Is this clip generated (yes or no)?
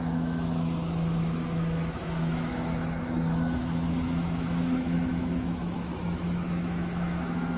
yes